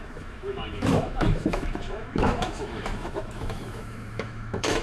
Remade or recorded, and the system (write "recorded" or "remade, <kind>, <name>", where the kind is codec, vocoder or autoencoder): remade, autoencoder, DAC-VAE